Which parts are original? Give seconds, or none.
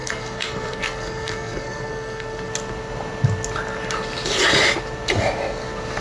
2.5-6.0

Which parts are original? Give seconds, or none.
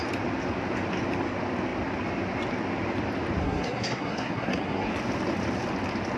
0.0-3.4; 4.9-6.2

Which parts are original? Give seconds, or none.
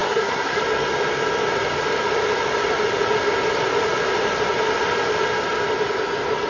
0.6-6.5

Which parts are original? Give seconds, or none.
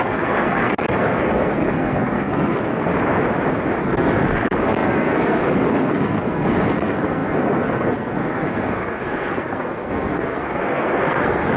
2.9-3.8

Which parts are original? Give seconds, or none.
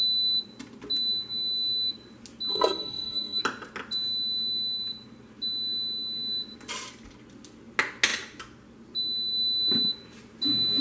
0.0-2.5; 3.4-10.8